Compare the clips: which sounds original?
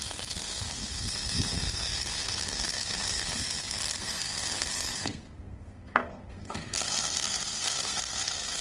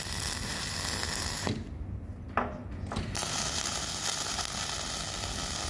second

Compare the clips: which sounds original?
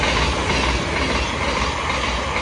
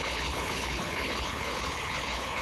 first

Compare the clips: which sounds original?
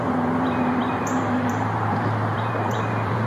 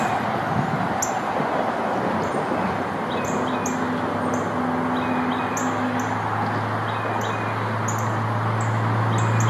second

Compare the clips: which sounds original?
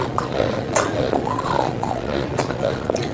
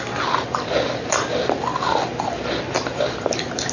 second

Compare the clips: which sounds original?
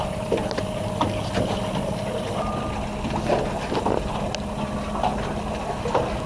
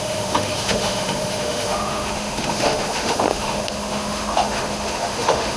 first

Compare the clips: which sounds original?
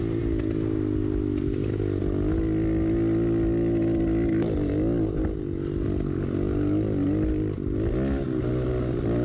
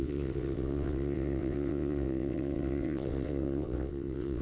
first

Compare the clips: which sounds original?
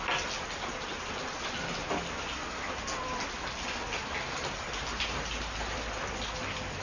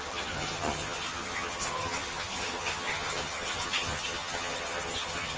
first